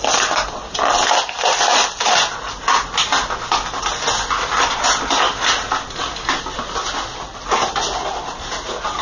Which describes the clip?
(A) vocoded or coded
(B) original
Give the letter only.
B